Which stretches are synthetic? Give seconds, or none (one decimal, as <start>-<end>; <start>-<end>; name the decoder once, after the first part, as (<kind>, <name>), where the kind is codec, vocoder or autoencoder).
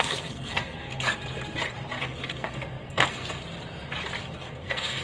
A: 0.0-1.1 (codec, SNAC); 2.0-3.4; 4.2-5.0